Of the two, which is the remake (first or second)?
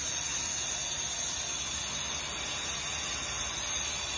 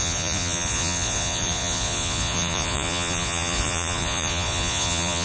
second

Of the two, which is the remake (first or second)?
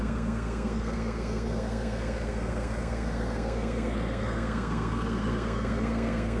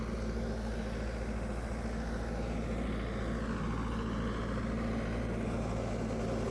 first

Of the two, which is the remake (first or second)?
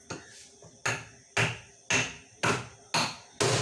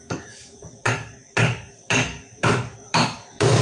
second